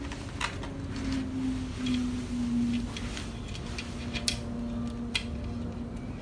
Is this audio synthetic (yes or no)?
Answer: no